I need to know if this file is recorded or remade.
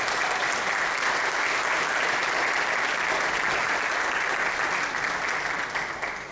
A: recorded